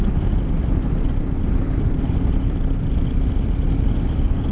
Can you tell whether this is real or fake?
real